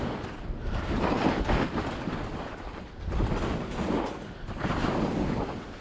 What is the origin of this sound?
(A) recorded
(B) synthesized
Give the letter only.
A